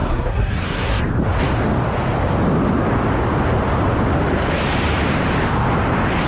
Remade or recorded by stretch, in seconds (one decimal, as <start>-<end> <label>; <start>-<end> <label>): 0.0-1.0 remade; 1.0-6.3 recorded

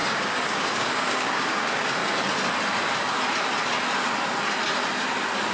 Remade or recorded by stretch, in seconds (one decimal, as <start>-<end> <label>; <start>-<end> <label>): 0.0-2.0 remade; 2.0-5.5 recorded

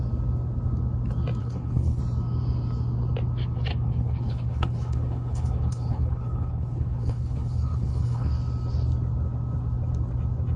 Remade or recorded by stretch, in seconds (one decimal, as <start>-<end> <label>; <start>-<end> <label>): 0.0-1.4 recorded; 1.4-2.0 remade; 2.0-3.7 recorded; 3.7-8.3 remade; 8.3-10.6 recorded

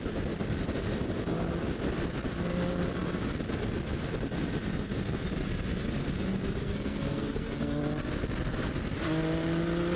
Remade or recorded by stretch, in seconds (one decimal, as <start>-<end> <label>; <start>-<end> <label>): 0.0-6.6 recorded; 6.6-7.8 remade; 7.8-10.0 recorded

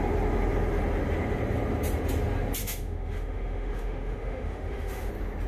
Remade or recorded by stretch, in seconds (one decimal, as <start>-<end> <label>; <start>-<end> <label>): 0.0-2.6 recorded; 2.6-5.1 remade; 5.1-5.5 recorded

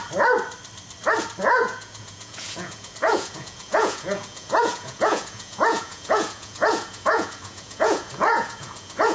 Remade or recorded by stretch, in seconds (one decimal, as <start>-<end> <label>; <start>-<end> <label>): 0.0-1.4 recorded; 1.4-9.1 remade